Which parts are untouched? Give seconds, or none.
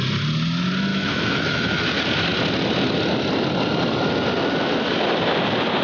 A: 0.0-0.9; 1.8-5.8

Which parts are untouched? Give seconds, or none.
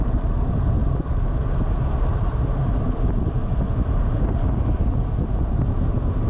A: 0.0-6.3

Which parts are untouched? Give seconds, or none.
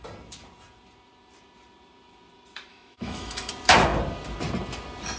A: 0.0-2.7; 3.5-5.2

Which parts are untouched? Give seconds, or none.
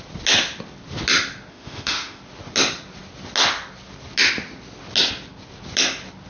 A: 0.0-1.5; 2.2-6.3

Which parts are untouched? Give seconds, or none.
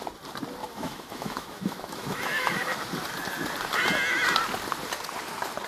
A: 0.0-0.6; 2.8-5.7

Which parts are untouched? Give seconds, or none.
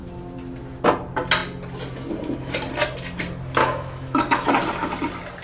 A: 0.0-3.6; 4.5-5.4